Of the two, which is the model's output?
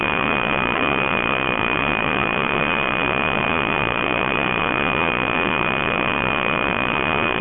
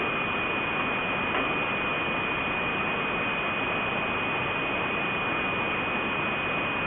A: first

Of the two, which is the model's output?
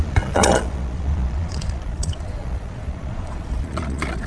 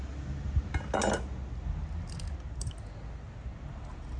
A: first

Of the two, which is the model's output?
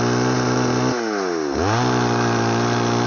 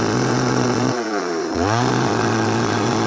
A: second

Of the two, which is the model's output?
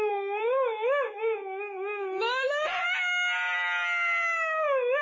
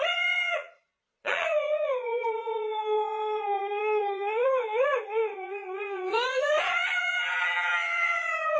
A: second